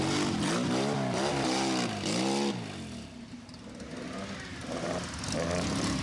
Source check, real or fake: real